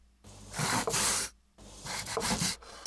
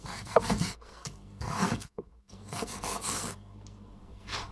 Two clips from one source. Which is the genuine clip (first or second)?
first